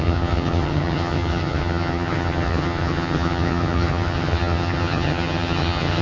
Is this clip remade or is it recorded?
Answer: remade